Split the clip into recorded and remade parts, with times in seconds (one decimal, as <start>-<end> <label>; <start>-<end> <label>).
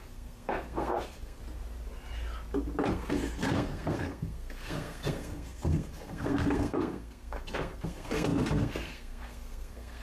0.0-1.4 remade; 1.4-2.9 recorded; 2.9-10.0 remade